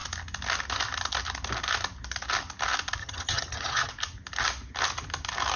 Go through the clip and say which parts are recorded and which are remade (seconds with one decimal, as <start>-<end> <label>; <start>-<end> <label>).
0.0-3.0 recorded; 3.0-3.9 remade; 3.9-5.6 recorded